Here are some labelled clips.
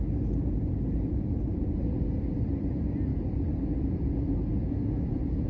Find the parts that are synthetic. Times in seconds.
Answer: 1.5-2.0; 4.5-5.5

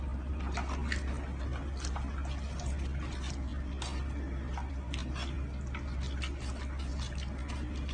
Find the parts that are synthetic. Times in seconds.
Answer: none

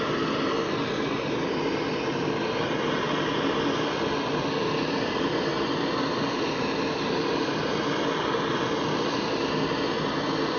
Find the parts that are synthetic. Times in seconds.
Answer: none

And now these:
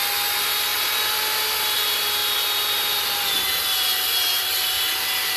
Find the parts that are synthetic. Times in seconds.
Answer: none

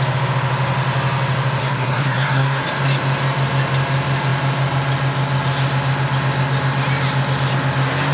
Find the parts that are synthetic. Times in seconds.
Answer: 1.6-2.6